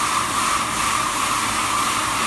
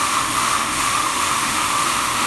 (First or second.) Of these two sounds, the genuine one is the first